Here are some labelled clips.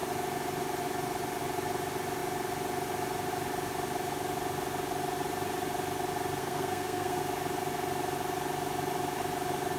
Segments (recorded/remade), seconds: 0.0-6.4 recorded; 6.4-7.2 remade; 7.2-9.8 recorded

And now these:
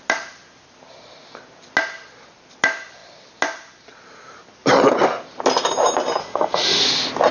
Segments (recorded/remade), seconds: 0.0-6.2 recorded; 6.2-6.8 remade; 6.8-7.3 recorded

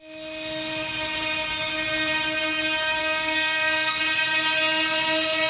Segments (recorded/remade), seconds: 0.0-3.0 recorded; 3.0-4.0 remade; 4.0-5.5 recorded

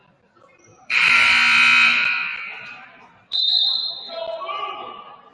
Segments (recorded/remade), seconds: 0.0-0.7 recorded; 0.7-3.9 remade; 3.9-5.3 recorded

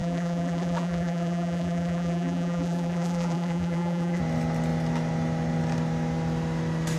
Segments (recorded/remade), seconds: 0.0-4.2 remade; 4.2-7.0 recorded

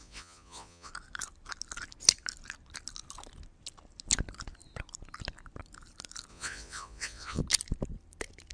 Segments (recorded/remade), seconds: 0.0-0.9 remade; 0.9-6.3 recorded; 6.3-7.4 remade; 7.4-8.5 recorded